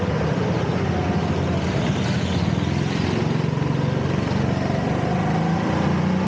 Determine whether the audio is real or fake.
real